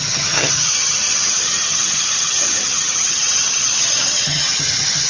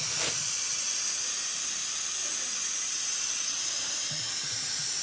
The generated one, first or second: first